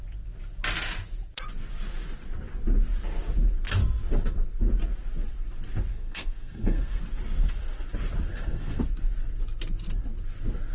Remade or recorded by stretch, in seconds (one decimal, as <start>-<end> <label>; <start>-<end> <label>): 0.0-5.9 recorded; 5.9-7.0 remade; 7.0-8.3 recorded; 8.3-8.8 remade; 8.8-10.7 recorded